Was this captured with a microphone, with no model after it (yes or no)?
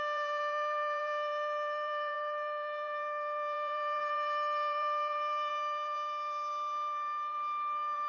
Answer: no